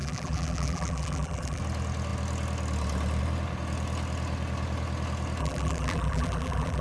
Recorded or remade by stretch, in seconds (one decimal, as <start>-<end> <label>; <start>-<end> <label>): 0.0-1.6 remade; 1.6-5.4 recorded; 5.4-6.8 remade